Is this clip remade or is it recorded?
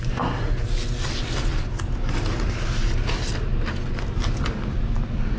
recorded